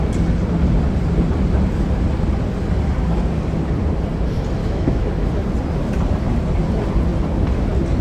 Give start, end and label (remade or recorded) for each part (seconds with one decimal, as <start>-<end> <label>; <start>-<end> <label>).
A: 0.0-4.6 recorded; 4.6-5.1 remade; 5.1-8.0 recorded